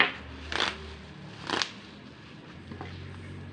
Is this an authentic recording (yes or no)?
yes